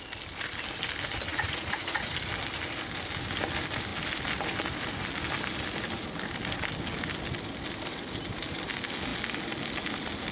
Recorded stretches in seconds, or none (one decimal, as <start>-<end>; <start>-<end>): 0.0-1.3; 2.1-10.3